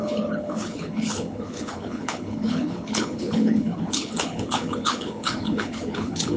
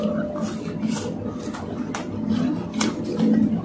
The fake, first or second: first